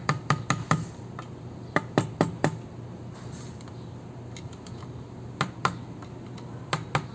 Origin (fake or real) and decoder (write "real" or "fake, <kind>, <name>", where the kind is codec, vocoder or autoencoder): real